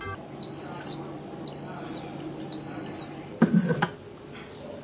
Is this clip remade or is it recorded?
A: recorded